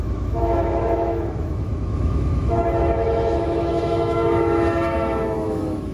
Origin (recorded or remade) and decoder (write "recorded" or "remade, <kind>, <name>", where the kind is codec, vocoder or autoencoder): remade, autoencoder, DAC-VAE